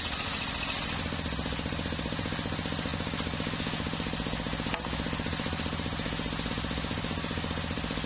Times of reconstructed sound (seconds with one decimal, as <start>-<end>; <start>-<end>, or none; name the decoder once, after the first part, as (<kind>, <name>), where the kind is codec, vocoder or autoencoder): none